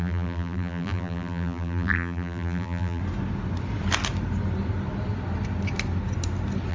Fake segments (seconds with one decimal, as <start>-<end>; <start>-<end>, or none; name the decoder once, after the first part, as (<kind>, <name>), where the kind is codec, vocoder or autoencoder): 0.0-3.0 (vocoder, BigVGAN v2)